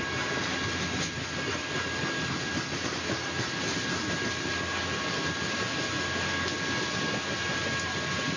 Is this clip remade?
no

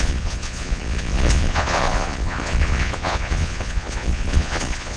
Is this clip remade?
yes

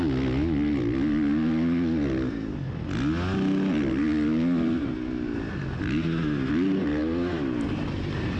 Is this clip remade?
no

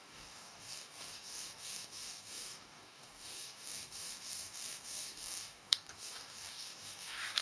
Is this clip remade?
yes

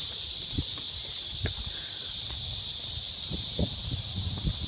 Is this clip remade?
yes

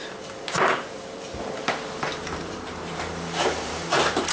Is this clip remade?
yes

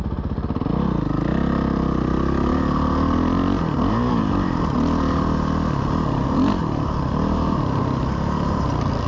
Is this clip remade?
no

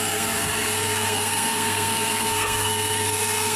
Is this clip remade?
yes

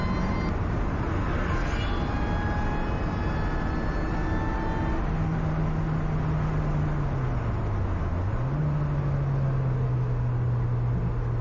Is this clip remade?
no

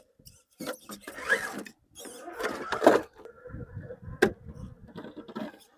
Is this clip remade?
no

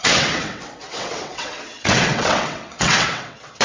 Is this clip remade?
yes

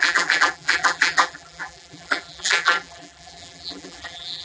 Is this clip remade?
yes